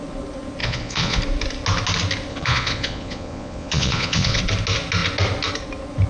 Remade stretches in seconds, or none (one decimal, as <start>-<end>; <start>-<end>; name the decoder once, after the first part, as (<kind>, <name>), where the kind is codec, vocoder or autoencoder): 0.6-1.2 (vocoder, Vocos); 2.3-4.4